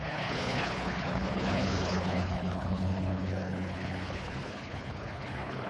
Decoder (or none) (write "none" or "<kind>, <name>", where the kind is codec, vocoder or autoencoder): codec, HILCodec